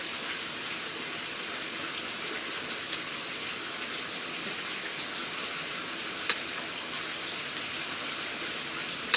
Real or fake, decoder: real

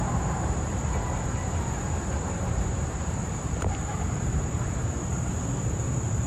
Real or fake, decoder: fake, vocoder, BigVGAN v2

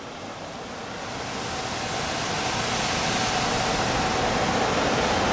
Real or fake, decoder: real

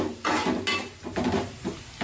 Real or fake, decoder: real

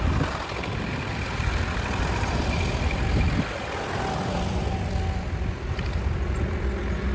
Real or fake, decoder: real